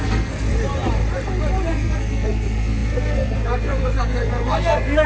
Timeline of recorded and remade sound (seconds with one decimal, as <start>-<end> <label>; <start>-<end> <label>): 0.0-0.5 remade; 0.5-1.7 recorded; 1.7-5.1 remade